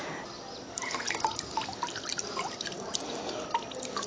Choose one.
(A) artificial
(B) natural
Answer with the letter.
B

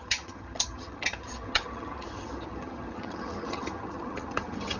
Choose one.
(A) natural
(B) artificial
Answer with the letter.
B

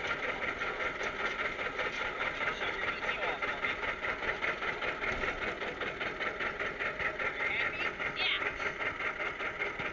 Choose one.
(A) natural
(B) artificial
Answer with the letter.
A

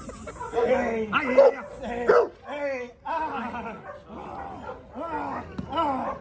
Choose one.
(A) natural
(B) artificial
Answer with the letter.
A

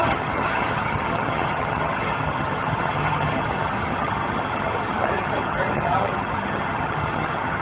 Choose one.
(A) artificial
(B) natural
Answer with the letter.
A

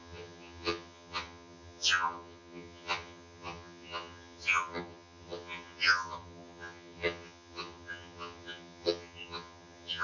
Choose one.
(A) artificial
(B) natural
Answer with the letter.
A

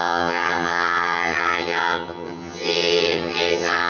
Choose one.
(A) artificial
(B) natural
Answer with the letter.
A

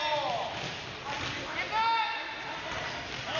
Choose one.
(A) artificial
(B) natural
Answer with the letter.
B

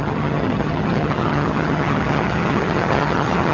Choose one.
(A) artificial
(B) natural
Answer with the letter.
A